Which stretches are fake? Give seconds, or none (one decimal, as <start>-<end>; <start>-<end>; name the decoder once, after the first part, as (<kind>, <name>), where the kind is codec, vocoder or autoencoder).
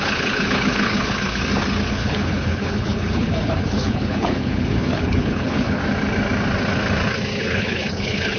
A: 0.0-1.4 (codec, HILCodec); 1.9-5.8; 7.4-8.4